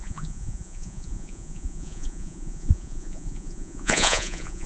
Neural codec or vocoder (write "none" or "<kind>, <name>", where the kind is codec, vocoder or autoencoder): vocoder, Vocos